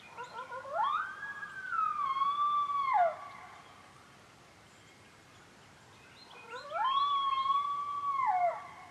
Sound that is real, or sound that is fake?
real